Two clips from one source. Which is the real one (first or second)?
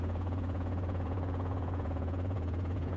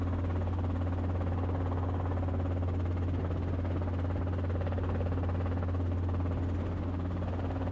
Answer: second